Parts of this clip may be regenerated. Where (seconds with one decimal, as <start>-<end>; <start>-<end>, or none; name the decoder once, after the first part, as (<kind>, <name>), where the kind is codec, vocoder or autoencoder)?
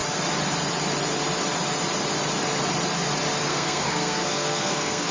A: 3.5-5.1 (codec, SNAC)